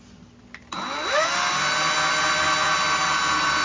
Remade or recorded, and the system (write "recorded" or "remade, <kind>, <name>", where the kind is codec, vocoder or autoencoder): recorded